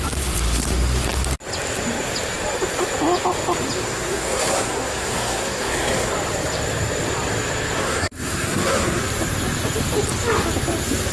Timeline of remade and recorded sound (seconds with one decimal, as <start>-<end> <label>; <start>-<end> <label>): 0.0-3.8 recorded; 3.8-6.1 remade; 6.1-7.8 recorded; 7.8-9.0 remade; 9.0-11.1 recorded